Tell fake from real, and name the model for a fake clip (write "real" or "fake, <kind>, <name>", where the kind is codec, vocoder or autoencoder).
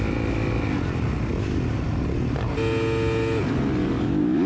real